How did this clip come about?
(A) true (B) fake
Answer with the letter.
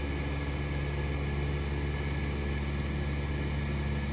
A